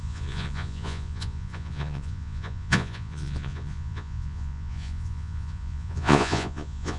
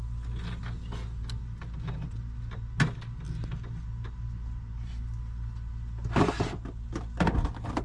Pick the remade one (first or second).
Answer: first